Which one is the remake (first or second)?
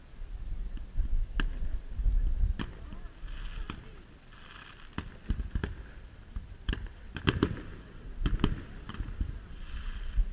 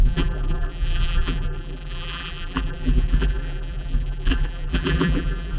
second